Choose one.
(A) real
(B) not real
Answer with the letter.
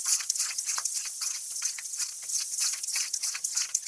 B